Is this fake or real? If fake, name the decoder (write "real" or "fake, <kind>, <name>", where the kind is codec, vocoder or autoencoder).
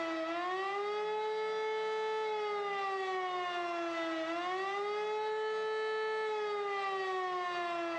real